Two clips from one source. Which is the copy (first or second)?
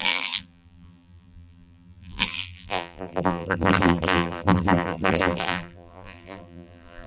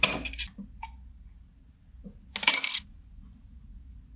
first